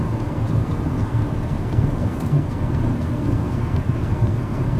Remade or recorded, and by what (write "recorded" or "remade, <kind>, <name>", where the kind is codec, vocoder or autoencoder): remade, codec, SNAC